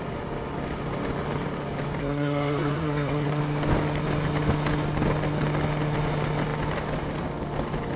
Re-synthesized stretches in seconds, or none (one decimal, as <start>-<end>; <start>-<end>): 2.0-3.4